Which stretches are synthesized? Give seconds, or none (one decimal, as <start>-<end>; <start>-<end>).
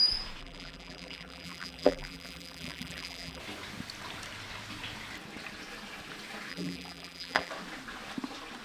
0.4-3.4; 6.5-7.5